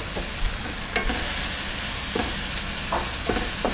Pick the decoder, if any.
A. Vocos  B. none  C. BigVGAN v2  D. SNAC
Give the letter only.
B